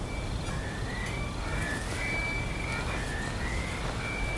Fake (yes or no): no